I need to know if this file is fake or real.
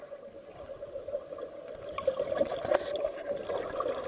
fake